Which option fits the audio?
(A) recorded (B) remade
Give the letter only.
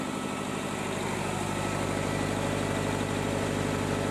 A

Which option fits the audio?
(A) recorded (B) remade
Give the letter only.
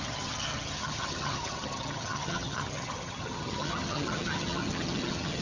B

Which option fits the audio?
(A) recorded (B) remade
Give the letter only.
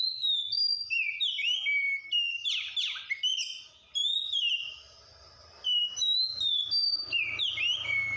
A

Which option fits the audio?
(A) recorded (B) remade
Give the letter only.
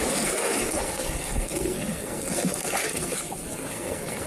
B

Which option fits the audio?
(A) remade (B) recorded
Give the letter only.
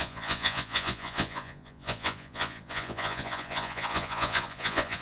A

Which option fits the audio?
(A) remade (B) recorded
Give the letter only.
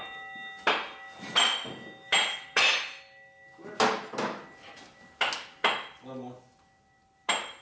B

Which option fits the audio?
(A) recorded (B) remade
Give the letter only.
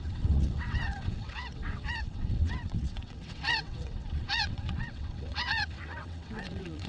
B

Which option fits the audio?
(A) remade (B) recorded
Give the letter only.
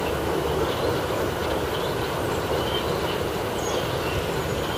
B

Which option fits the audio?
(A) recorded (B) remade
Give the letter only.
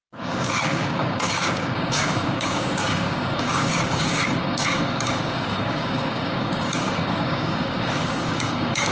B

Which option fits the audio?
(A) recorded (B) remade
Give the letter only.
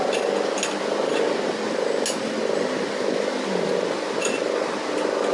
A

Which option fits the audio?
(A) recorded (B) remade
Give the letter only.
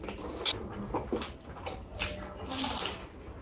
A